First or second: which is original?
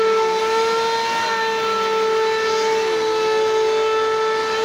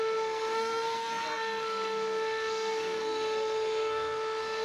first